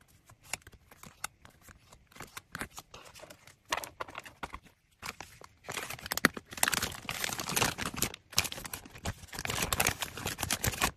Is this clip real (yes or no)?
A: yes